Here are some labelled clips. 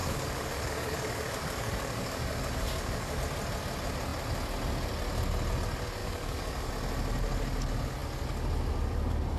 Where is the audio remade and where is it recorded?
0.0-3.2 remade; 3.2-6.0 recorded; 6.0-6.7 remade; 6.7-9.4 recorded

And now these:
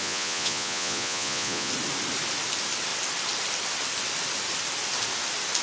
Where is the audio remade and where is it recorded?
0.0-1.7 remade; 1.7-5.6 recorded

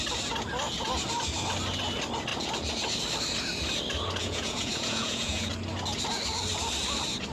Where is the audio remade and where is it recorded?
0.0-4.2 recorded; 4.2-5.5 remade; 5.5-7.3 recorded

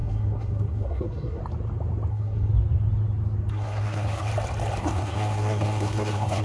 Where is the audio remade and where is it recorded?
0.0-1.4 remade; 1.4-2.1 recorded; 2.1-2.5 remade; 2.5-3.5 recorded; 3.5-4.3 remade; 4.3-4.8 recorded; 4.8-6.4 remade

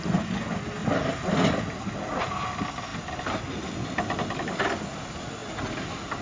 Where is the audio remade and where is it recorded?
0.0-0.8 recorded; 0.8-2.2 remade; 2.2-6.2 recorded